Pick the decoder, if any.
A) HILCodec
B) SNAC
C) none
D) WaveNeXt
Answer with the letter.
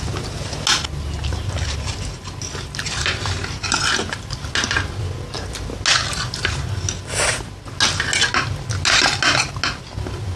C